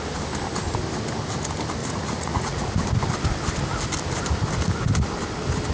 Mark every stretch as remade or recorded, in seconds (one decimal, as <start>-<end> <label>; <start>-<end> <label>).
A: 0.0-1.8 recorded; 1.8-2.8 remade; 2.8-5.7 recorded